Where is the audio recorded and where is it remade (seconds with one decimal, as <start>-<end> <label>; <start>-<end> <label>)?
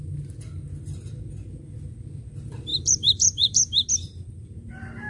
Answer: 0.0-2.7 recorded; 2.7-3.9 remade; 3.9-5.1 recorded